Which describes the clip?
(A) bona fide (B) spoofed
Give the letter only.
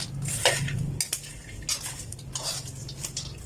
A